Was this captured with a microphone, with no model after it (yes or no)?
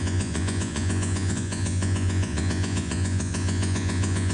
no